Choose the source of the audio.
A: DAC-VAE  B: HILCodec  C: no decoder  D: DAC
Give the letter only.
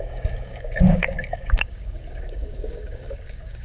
D